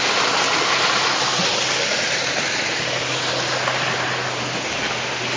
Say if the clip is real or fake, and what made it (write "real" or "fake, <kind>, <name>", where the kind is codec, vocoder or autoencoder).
real